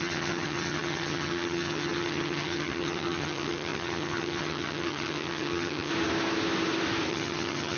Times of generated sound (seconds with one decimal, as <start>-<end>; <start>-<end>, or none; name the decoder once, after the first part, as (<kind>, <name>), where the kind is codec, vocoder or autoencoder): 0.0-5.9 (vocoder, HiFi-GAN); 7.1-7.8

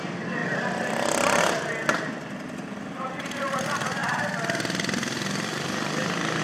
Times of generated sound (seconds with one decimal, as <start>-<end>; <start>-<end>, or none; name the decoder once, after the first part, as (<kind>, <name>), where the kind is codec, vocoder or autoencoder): 4.0-6.4 (vocoder, BigVGAN v2)

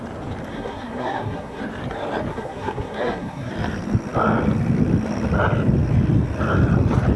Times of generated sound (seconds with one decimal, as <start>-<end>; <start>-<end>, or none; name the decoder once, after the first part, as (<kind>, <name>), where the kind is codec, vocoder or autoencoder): 0.5-1.6 (codec, SNAC); 2.3-3.5